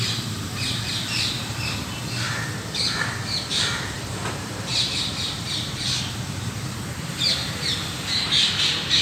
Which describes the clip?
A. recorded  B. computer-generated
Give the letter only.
B